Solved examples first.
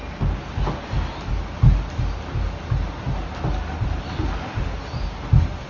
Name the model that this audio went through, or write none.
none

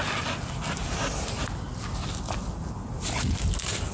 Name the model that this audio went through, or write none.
none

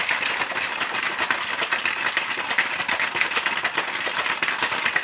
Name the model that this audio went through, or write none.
none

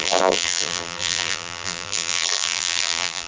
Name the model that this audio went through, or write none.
vocoder, BigVGAN v2